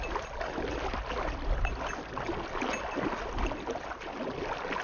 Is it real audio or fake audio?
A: real